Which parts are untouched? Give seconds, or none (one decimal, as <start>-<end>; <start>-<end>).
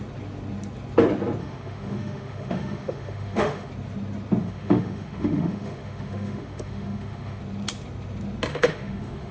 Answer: 0.0-1.4; 3.7-4.4; 7.4-8.5